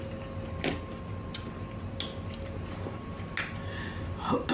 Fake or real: real